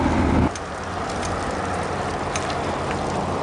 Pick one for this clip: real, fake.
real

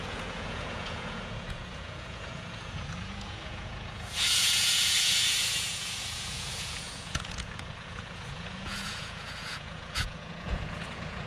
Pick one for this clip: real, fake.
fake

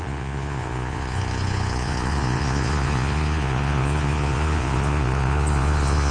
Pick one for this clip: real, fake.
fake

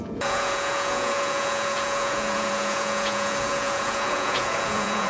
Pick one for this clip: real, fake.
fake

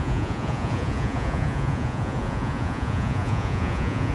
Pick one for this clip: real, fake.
fake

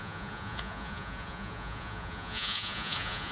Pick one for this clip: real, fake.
fake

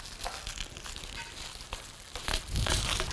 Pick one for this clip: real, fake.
real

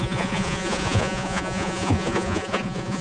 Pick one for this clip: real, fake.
fake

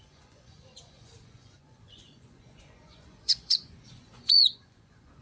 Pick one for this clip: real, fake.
fake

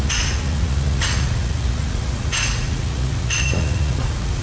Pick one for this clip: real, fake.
fake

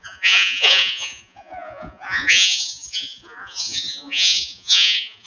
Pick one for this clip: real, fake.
fake